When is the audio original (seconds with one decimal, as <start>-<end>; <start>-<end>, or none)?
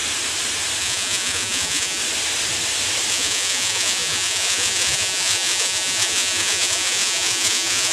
0.0-0.8; 2.0-3.1